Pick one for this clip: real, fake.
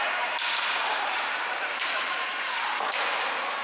fake